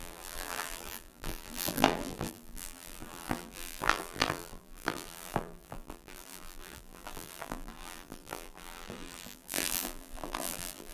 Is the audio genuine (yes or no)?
no